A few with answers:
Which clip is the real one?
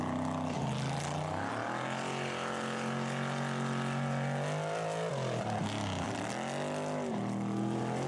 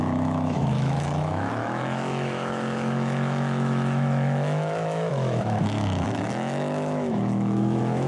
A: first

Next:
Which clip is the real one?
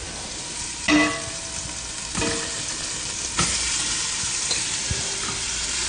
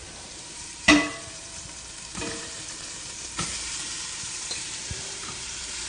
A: first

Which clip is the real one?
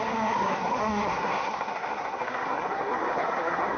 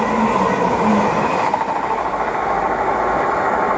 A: second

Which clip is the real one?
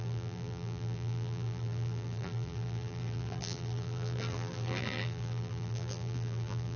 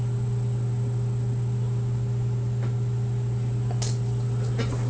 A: second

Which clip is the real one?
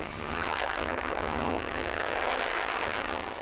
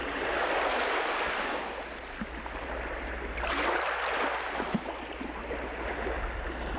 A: second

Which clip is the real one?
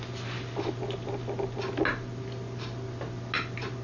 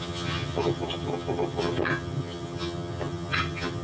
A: first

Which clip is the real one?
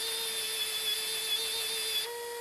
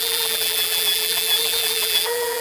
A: first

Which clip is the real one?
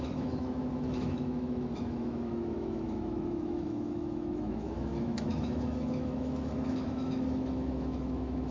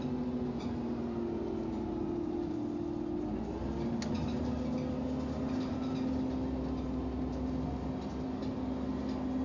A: second